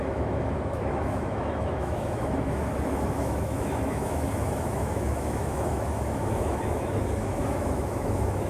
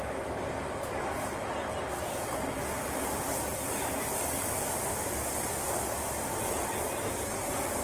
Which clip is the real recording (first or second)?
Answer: second